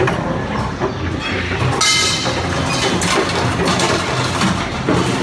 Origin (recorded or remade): recorded